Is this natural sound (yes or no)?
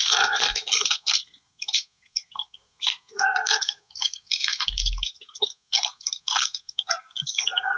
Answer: no